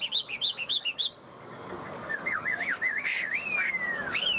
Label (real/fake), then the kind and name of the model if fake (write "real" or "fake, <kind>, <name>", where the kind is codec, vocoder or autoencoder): fake, codec, DAC